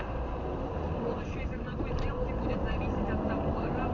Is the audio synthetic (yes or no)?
yes